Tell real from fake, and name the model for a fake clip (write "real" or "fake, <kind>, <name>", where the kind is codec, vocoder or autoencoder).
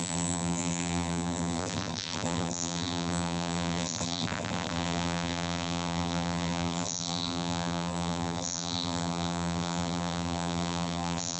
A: fake, vocoder, BigVGAN v2